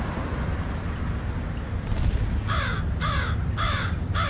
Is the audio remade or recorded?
recorded